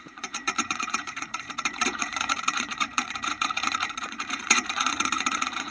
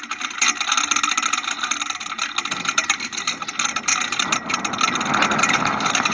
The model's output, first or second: first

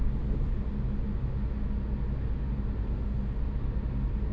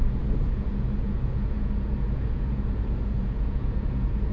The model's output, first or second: second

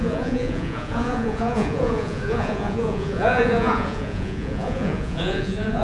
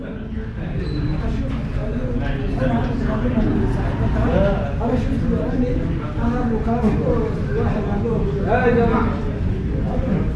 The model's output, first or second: first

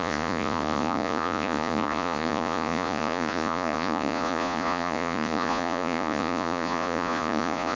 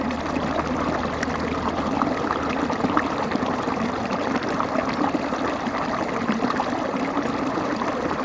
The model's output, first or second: first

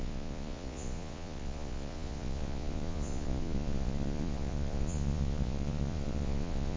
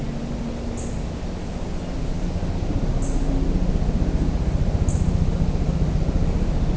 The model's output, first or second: first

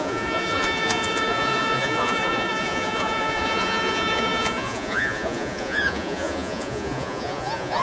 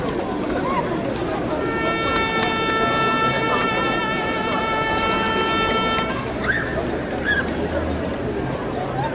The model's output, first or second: first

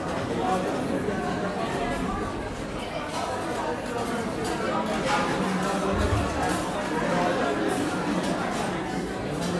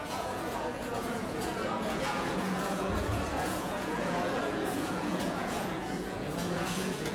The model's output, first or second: second